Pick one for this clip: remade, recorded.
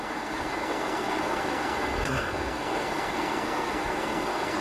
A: remade